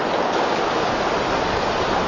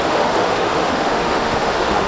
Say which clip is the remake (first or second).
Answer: second